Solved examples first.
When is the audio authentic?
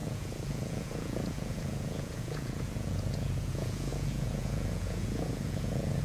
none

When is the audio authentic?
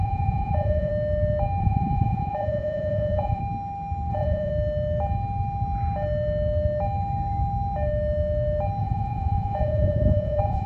0.9-1.6; 3.4-4.1; 4.5-8.8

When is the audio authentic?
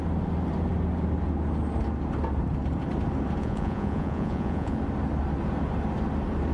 0.0-3.4; 4.8-6.5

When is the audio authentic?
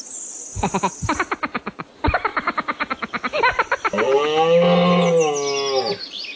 0.0-6.4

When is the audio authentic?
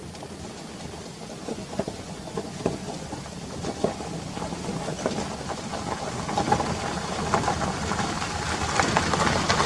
0.0-1.5; 3.2-9.7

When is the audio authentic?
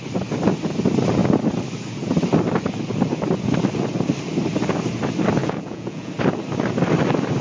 0.0-5.4; 6.1-7.4